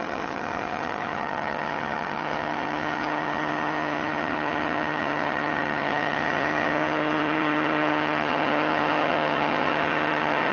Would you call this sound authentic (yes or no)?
no